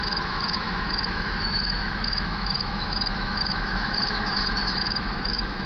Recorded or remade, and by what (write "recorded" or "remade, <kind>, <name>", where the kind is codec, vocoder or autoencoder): remade, autoencoder, DAC-VAE